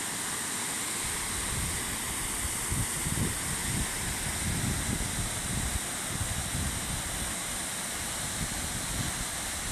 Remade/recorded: recorded